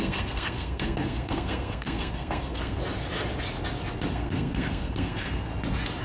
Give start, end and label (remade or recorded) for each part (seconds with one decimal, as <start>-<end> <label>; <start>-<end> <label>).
0.0-2.8 remade; 2.8-4.1 recorded; 4.1-5.5 remade; 5.5-6.0 recorded